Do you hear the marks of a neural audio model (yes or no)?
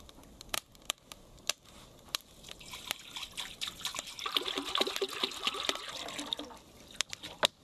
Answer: no